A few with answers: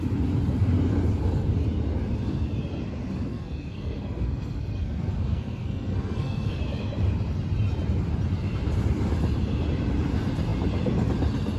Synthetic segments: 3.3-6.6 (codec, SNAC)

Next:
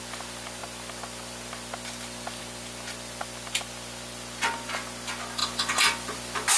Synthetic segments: none